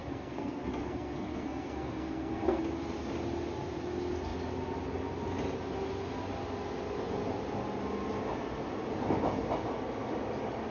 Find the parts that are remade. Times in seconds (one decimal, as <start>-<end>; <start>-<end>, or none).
0.0-2.6